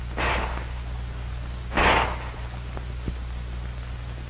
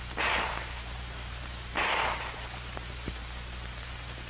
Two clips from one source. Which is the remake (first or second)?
second